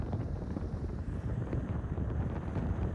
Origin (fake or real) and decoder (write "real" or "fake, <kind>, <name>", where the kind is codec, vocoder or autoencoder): fake, vocoder, BigVGAN v2